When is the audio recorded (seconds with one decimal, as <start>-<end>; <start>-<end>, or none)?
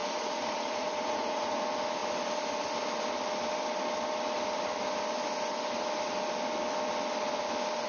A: 1.6-7.9